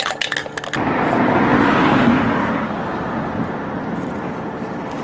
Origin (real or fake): real